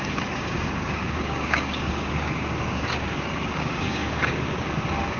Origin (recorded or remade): remade